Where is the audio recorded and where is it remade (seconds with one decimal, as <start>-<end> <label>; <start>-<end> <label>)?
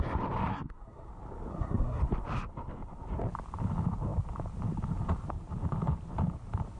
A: 0.0-0.5 recorded; 0.5-1.1 remade; 1.1-1.5 recorded; 1.5-2.0 remade; 2.0-6.8 recorded